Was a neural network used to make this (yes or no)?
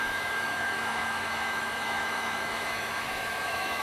yes